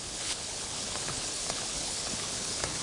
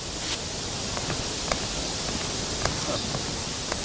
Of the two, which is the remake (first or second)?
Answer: first